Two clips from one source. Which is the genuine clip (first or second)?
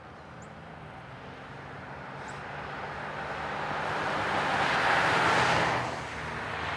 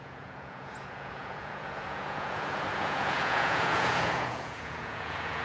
first